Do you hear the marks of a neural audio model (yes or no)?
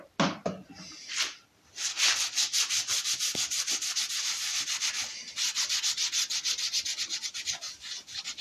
no